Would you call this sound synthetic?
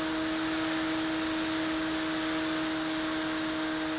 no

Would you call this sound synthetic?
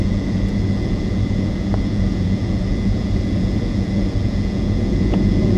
yes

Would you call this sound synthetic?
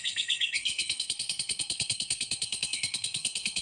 yes